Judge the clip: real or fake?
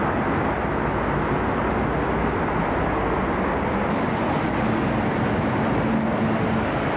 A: real